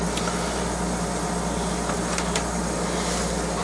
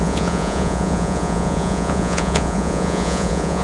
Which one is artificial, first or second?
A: second